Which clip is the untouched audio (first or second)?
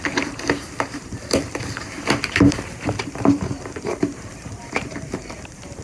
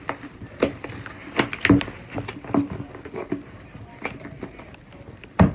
second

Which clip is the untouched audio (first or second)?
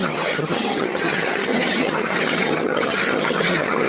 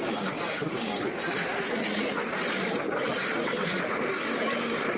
second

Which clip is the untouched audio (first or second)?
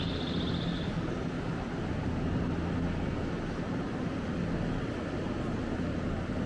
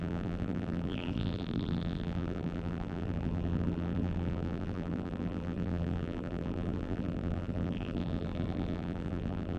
first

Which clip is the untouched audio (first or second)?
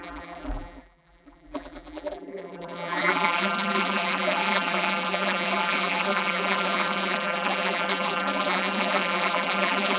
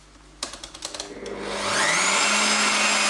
second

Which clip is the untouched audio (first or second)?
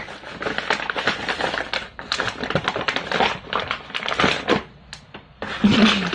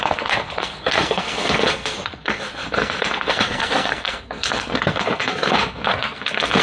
first